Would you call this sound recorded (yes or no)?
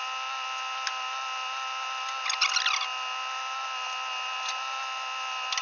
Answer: yes